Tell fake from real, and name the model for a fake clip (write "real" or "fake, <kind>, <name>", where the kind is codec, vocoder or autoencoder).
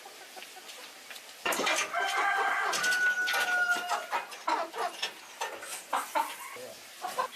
real